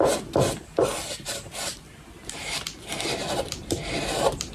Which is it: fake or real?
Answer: fake